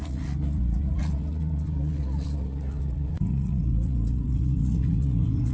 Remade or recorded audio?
remade